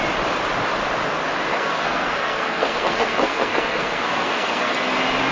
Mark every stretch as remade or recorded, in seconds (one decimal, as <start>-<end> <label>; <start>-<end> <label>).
0.0-1.5 recorded; 1.5-4.7 remade; 4.7-5.3 recorded